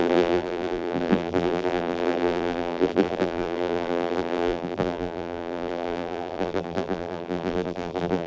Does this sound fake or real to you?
fake